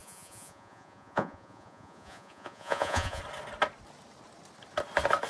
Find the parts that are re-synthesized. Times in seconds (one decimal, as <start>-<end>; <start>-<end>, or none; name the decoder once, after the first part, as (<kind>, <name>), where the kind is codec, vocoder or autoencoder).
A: 0.0-3.2 (vocoder, Vocos)